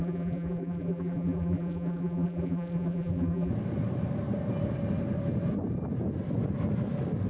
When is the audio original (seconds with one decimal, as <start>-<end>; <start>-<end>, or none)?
3.5-7.3